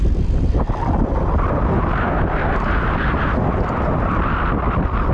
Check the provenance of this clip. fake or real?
real